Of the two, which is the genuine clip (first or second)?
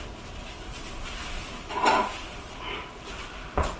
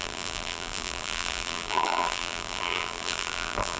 first